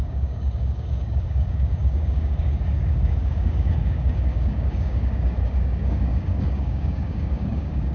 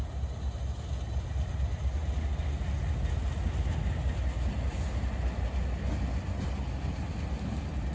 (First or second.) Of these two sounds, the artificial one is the first